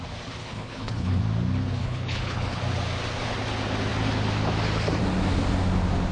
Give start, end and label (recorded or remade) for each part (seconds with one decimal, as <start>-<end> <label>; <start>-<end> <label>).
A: 0.0-0.4 recorded; 0.4-1.2 remade; 1.2-1.8 recorded; 1.8-2.6 remade; 2.6-6.1 recorded